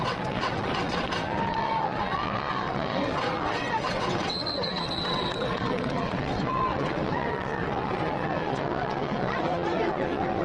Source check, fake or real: fake